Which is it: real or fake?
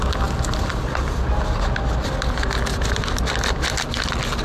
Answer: real